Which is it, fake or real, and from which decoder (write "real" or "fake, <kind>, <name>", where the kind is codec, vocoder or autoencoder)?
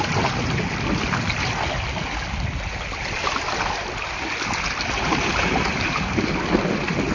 real